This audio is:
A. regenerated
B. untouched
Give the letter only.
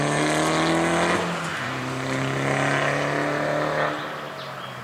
B